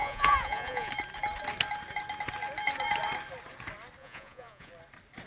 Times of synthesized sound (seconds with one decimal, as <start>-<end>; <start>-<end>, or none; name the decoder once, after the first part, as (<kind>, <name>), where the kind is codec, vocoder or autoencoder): 0.0-0.9 (vocoder, Vocos); 4.0-4.7